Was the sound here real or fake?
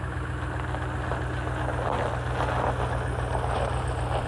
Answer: real